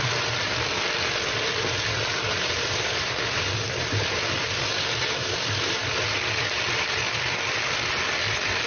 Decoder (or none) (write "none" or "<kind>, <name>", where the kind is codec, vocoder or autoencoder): none